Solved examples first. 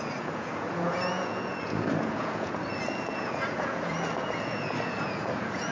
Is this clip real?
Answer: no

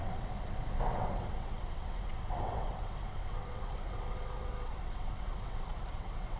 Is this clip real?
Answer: no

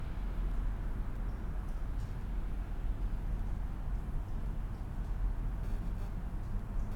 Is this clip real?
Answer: yes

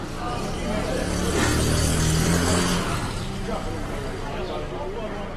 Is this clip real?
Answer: yes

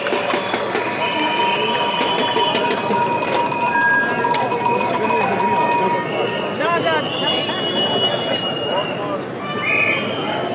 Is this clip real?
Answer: yes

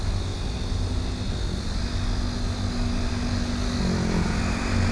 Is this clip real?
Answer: yes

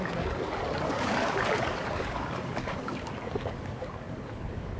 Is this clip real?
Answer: no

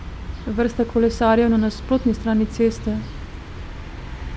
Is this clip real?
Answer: yes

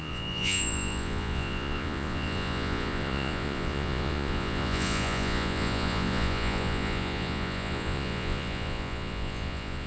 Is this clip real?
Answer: no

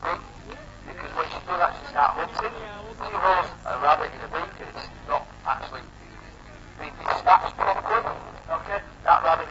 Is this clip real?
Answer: no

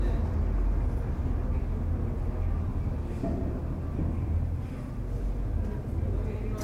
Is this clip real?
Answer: yes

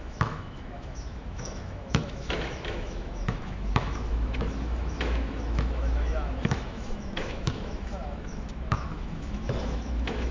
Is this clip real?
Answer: no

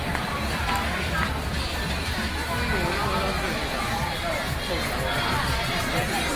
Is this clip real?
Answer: yes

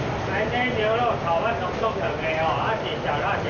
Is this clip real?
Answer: yes